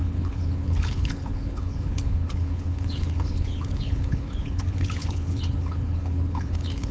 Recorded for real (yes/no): no